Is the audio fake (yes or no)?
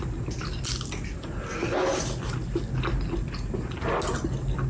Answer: no